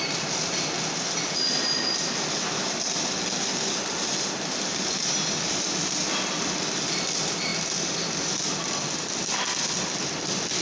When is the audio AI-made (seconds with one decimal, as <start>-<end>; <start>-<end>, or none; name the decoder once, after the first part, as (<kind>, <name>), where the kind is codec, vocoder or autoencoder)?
none